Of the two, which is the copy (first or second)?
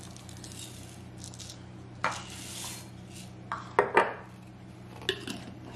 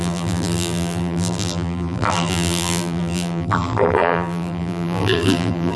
second